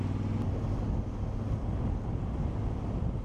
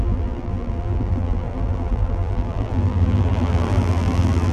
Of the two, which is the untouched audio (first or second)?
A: first